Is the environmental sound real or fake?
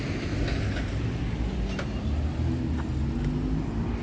real